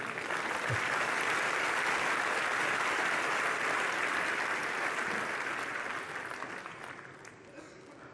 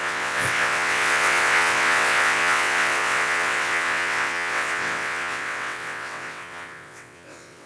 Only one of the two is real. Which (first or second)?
first